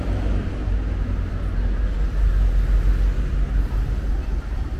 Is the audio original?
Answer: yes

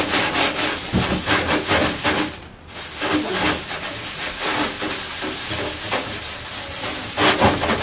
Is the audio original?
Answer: yes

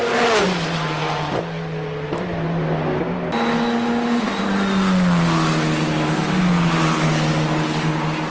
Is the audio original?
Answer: yes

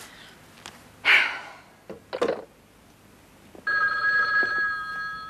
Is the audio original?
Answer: yes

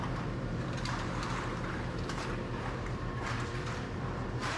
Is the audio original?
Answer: no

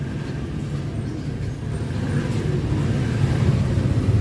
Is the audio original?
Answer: yes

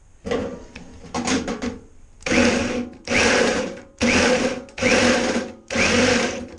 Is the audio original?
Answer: no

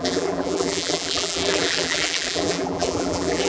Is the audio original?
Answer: no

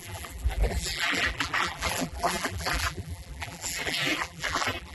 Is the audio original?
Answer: no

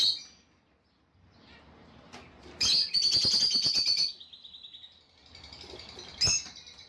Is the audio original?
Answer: yes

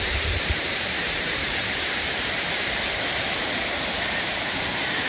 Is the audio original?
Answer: no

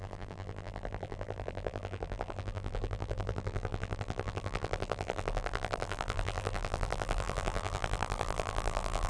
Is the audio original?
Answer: no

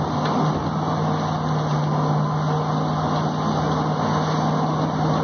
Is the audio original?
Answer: yes